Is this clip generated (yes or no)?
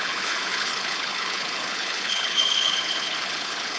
yes